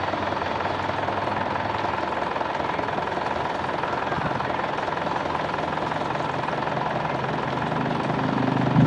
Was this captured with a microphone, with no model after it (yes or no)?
yes